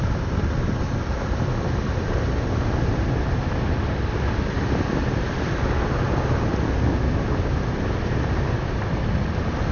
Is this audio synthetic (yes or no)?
no